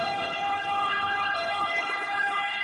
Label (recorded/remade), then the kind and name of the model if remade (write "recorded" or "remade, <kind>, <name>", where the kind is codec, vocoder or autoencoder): remade, codec, HILCodec